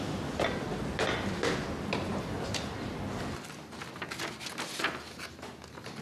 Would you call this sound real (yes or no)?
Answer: yes